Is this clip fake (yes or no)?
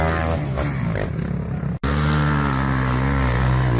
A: no